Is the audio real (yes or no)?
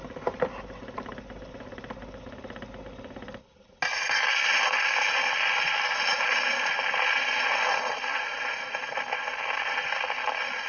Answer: yes